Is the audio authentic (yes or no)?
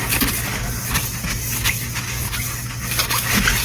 yes